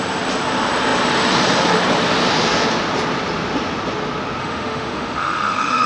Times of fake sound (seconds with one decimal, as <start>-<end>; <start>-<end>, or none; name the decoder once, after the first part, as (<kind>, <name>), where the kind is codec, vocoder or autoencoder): 4.4-5.9 (autoencoder, DAC-VAE)